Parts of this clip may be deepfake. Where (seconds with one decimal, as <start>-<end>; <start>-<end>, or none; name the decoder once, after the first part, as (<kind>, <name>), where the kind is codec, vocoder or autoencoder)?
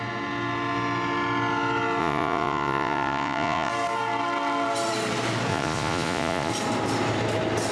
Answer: 2.0-3.7 (vocoder, Vocos); 5.5-6.5